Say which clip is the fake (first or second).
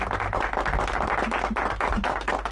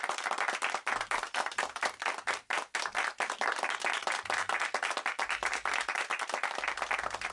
second